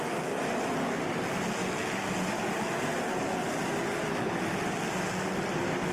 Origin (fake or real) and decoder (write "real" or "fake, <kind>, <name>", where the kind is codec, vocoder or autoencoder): real